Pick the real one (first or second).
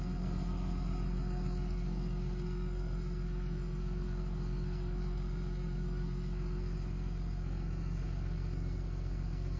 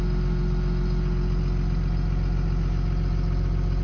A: second